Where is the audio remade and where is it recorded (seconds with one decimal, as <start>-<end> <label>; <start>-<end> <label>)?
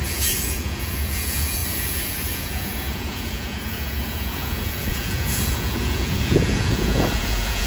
0.0-7.7 remade